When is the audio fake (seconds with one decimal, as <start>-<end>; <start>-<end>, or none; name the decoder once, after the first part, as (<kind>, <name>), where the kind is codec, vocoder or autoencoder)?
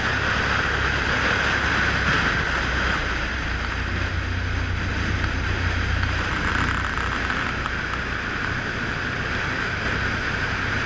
4.9-6.3 (vocoder, BigVGAN v2)